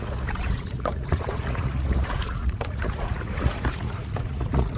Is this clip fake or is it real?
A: fake